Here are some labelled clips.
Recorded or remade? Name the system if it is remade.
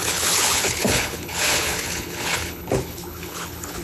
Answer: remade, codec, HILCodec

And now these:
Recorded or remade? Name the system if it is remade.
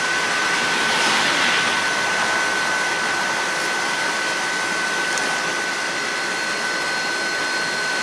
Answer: recorded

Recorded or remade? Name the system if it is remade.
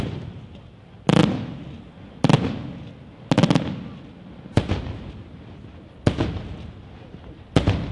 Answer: recorded